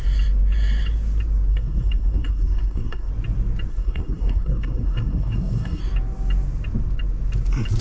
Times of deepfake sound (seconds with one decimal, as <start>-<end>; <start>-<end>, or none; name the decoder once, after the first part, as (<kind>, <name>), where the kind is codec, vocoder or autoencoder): 1.5-3.1 (codec, SNAC); 3.7-5.8